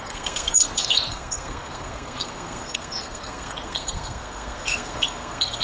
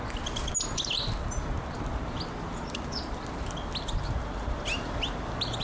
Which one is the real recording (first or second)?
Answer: second